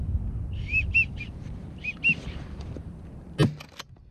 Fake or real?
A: real